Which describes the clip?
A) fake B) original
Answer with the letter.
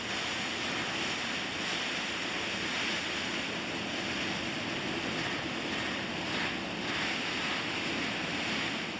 B